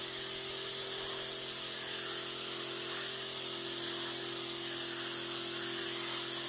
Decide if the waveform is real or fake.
real